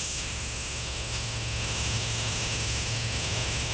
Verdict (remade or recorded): remade